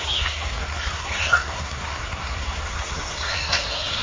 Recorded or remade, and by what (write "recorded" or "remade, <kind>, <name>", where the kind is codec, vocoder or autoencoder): remade, codec, SNAC